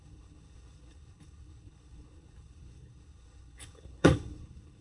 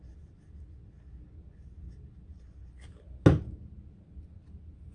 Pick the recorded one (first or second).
second